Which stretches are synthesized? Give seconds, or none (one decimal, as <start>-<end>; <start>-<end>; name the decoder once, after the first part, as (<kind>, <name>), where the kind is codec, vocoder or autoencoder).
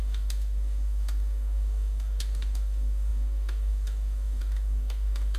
0.0-5.4 (codec, DAC)